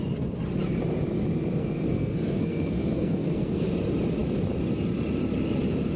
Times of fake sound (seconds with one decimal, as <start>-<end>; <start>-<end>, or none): 1.6-3.7